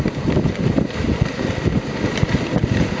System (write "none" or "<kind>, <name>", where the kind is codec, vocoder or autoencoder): none